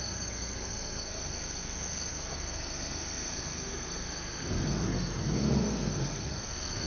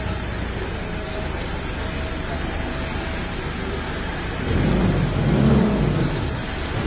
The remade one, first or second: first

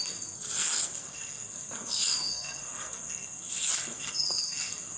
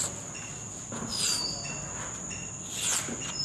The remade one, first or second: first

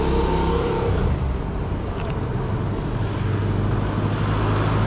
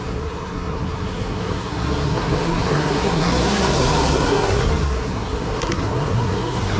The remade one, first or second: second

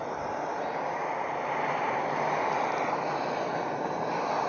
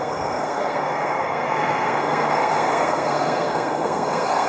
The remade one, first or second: second